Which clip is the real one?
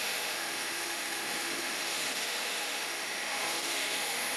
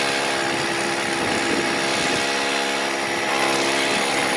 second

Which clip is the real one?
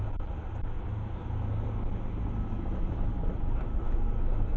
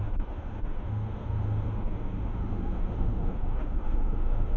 first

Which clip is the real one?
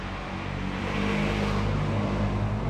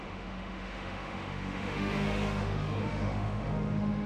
first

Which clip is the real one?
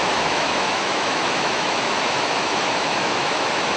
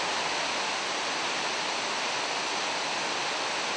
second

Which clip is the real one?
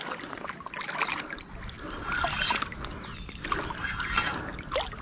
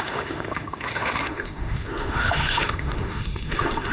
first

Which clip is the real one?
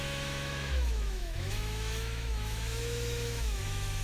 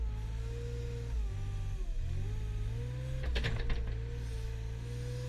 second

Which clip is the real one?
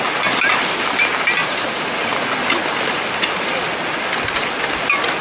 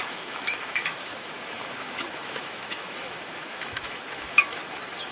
first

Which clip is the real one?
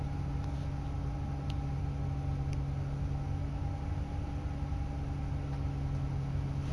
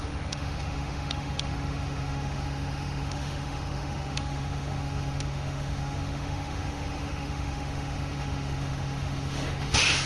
first